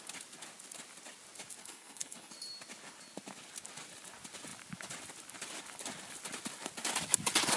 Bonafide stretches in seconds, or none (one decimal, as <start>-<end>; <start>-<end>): 0.0-1.6; 2.3-7.6